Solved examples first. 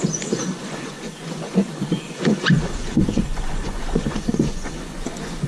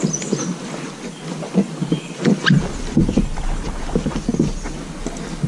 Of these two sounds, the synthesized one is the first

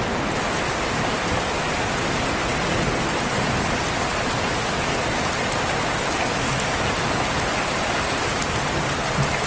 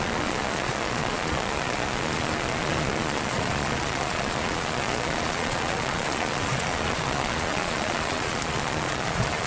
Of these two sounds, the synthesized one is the second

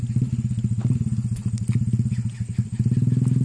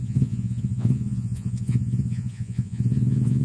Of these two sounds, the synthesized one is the second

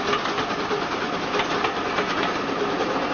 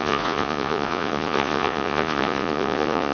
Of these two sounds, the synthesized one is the second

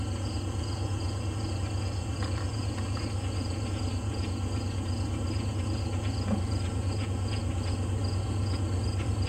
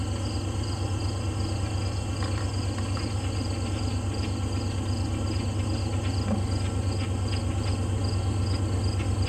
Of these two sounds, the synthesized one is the first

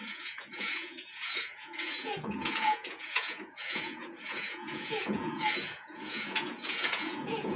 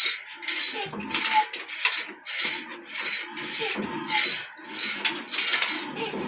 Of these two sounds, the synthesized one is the first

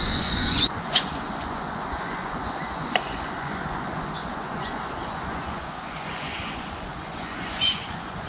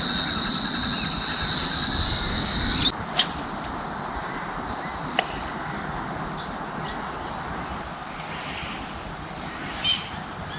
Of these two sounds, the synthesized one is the first